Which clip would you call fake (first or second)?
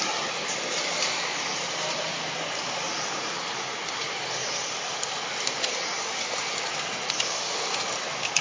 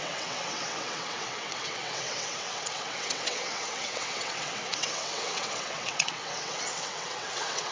second